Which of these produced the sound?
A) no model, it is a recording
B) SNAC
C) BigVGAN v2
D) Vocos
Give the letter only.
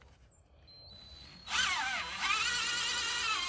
A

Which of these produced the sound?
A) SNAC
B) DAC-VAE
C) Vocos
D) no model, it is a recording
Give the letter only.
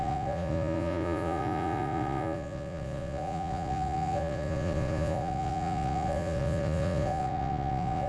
C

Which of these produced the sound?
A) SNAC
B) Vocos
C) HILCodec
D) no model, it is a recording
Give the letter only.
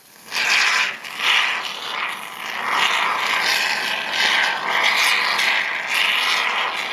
D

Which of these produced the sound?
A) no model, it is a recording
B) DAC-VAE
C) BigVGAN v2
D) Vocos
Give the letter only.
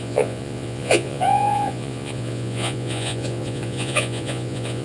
D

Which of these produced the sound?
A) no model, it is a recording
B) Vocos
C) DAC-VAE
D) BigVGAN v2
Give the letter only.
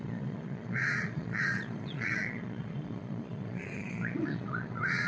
B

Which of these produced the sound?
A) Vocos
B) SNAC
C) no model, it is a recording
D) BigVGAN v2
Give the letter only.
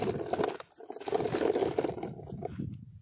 C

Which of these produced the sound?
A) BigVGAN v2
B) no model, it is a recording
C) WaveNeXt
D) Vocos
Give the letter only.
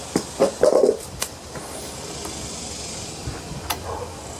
B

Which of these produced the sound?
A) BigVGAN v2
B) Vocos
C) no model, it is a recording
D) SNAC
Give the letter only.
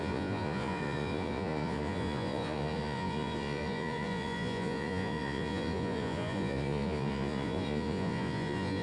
B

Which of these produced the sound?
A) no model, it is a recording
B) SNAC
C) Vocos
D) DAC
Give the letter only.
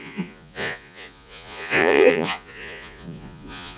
C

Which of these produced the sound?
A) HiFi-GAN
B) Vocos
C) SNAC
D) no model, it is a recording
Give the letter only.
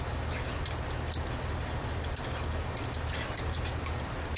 D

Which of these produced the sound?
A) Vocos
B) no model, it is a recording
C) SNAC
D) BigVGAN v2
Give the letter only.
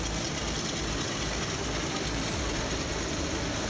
B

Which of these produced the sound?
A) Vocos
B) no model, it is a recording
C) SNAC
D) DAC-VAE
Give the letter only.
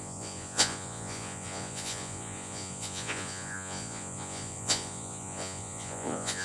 A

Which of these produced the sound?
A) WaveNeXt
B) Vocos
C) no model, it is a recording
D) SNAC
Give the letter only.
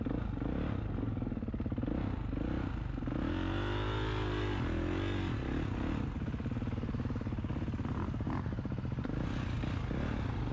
C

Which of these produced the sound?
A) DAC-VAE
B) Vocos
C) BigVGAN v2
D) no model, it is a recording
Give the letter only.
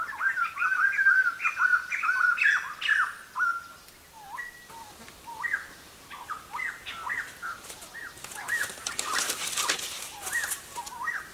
D